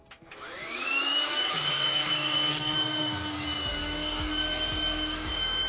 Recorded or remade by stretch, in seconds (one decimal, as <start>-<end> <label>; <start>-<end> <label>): 0.0-5.7 remade